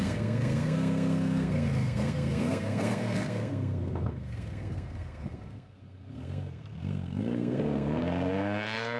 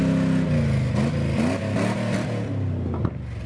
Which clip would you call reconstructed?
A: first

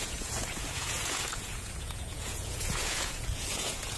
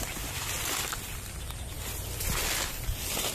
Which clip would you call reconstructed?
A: first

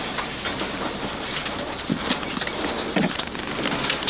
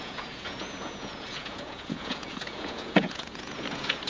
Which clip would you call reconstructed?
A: second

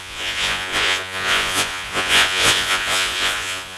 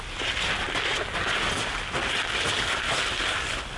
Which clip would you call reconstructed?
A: first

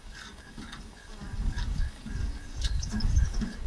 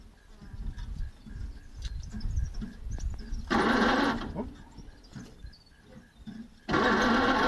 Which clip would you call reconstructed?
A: first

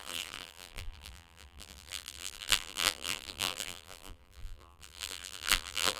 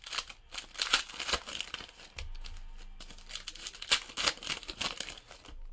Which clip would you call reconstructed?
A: first